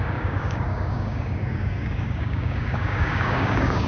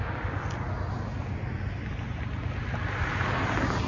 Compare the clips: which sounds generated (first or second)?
first